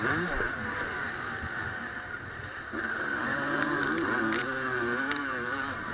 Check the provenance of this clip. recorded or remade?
remade